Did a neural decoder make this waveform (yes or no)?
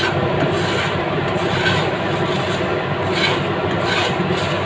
no